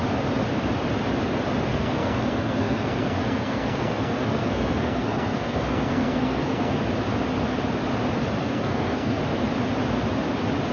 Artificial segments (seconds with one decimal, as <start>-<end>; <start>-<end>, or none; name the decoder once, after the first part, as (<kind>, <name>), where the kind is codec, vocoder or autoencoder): 1.7-6.8 (codec, SNAC); 8.4-9.2